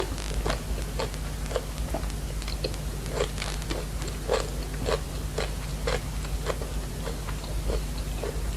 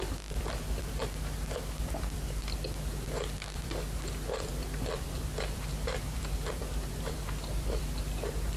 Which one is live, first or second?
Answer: first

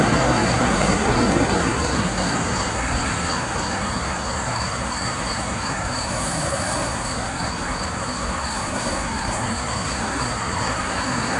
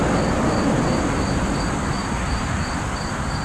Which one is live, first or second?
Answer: second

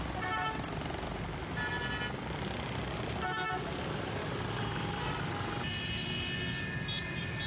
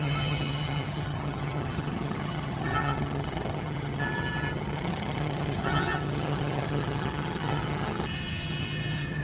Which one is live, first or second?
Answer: first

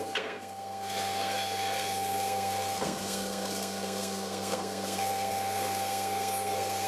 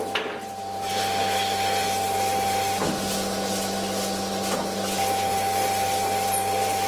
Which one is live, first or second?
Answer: second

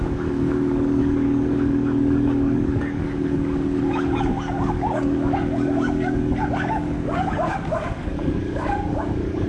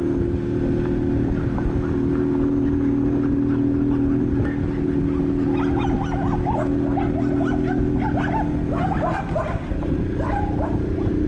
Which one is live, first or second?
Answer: second